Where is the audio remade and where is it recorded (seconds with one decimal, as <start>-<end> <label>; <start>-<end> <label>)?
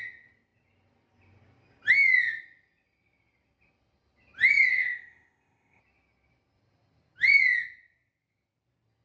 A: 0.0-4.7 recorded; 4.7-5.8 remade; 5.8-9.0 recorded